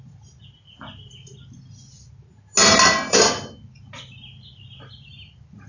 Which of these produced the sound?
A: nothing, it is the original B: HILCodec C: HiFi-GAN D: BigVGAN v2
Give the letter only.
A